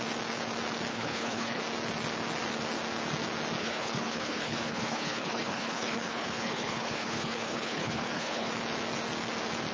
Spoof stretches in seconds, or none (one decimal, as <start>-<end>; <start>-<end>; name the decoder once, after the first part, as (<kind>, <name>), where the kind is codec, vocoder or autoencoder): 0.9-1.6 (codec, HILCodec); 3.6-8.5